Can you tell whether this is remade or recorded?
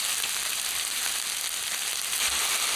recorded